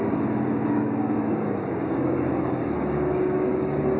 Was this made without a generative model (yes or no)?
no